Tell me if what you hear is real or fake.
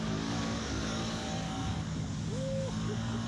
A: fake